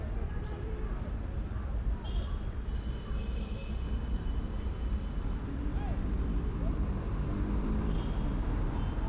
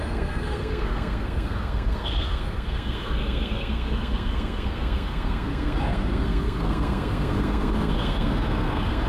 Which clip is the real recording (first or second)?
first